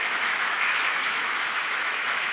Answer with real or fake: fake